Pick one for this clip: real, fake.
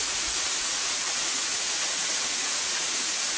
fake